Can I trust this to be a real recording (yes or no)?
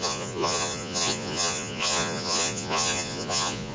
no